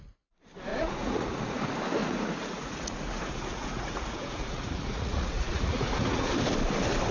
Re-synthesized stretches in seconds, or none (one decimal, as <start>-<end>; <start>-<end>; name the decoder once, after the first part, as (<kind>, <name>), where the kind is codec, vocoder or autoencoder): 0.7-1.6 (vocoder, Vocos); 2.0-6.3